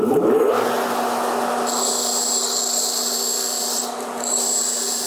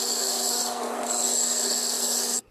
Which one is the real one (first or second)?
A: first